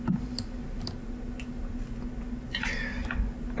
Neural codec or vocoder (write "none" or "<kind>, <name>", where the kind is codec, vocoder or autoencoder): none